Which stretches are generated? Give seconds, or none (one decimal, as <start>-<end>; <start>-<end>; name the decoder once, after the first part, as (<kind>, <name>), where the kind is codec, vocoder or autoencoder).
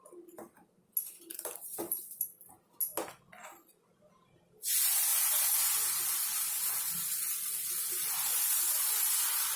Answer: none